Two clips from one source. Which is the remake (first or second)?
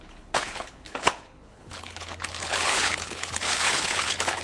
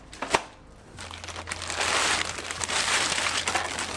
first